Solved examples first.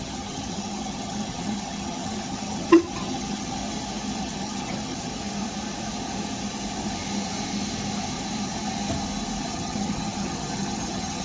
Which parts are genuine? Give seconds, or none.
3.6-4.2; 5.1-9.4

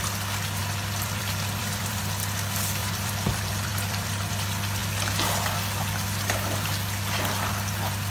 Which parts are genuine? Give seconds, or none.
0.0-0.6; 2.0-2.8; 4.3-8.1

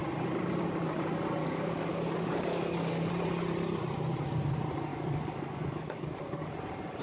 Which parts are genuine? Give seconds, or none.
0.0-1.4; 3.1-4.9; 6.2-7.0

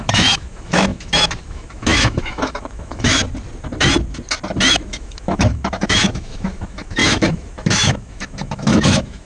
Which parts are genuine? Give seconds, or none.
3.2-4.7